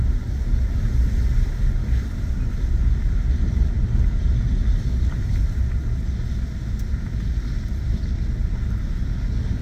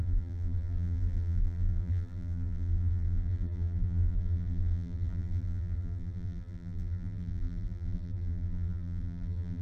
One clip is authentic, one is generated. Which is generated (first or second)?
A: second